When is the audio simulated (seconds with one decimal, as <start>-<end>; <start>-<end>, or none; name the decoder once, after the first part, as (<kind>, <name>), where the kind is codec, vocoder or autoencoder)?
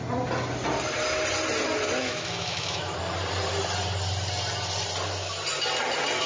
2.0-3.0 (autoencoder, DAC-VAE)